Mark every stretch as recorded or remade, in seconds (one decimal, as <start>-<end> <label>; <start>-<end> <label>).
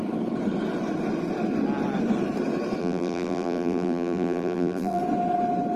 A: 0.0-2.8 recorded; 2.8-5.0 remade; 5.0-5.8 recorded